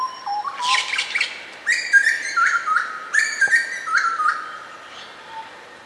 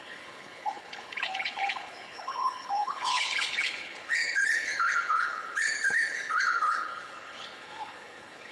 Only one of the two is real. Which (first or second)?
first